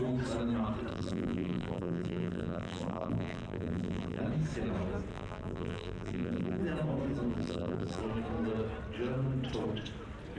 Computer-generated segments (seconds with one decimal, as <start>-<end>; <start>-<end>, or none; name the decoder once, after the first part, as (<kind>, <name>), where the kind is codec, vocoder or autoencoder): 0.9-4.2 (vocoder, BigVGAN v2); 5.1-6.6; 7.3-8.0